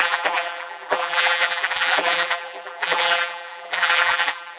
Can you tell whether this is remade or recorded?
remade